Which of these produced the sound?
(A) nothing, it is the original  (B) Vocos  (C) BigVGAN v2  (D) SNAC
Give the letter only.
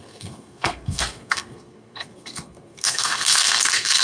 D